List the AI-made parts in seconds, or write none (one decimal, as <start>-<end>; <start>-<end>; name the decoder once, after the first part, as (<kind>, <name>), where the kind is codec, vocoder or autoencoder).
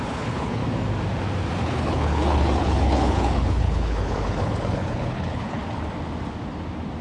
0.0-0.6 (codec, HILCodec); 1.6-5.6